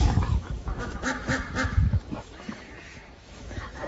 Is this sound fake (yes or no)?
yes